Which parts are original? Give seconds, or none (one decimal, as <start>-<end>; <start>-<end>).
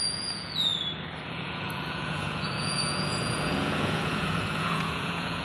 0.7-1.3